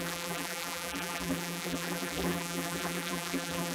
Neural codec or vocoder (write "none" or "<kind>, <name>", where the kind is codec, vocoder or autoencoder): vocoder, BigVGAN v2